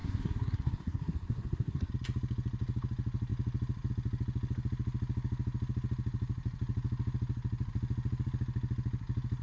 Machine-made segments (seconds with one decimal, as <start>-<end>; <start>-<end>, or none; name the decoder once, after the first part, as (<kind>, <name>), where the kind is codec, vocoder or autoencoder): 0.0-1.9 (codec, SNAC)